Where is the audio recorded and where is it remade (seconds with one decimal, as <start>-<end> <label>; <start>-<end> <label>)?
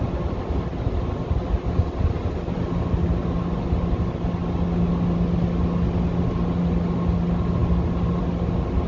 0.0-8.9 recorded